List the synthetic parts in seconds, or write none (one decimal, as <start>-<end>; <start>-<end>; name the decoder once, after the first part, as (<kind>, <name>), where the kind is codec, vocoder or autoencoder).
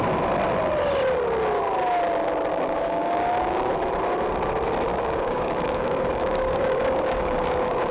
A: 2.5-3.7 (codec, DAC); 4.9-7.9